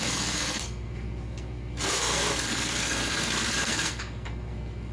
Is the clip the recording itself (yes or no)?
no